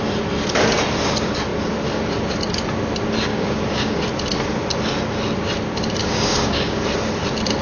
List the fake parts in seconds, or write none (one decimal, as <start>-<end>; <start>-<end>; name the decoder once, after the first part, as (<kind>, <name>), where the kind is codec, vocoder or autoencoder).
3.3-4.0 (codec, DAC); 6.0-6.8